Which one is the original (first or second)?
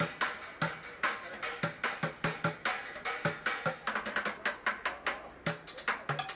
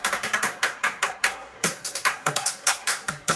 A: first